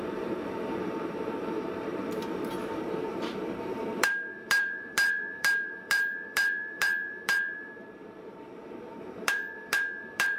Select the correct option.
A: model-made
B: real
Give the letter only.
A